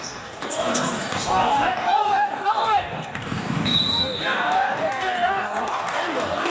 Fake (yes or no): yes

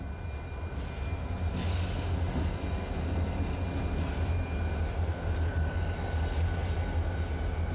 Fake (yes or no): no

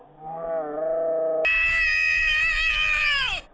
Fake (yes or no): no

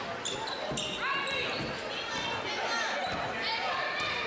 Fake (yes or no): no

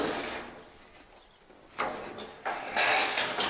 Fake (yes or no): no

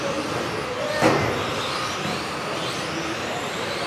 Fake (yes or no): no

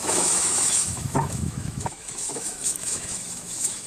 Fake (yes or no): yes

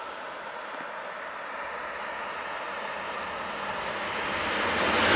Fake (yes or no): no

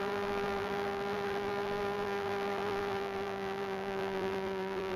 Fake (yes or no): yes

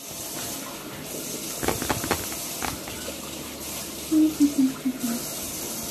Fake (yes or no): no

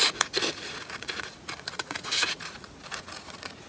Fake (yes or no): yes